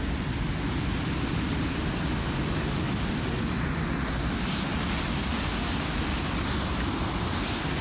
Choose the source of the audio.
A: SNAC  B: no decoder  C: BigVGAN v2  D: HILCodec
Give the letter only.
B